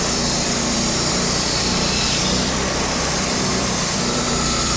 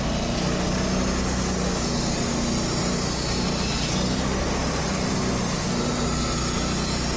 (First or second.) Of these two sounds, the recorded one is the second